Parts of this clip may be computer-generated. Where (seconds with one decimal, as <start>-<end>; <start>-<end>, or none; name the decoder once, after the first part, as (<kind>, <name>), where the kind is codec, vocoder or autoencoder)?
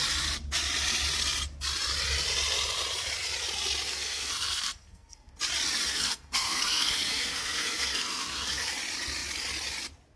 3.9-5.3 (codec, SNAC); 5.9-8.7